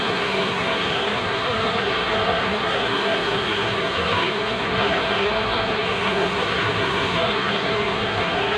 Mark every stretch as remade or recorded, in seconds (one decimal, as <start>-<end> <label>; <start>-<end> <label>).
0.0-8.6 remade